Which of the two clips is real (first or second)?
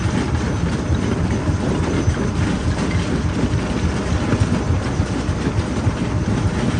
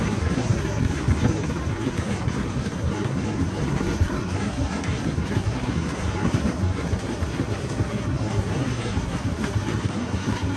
first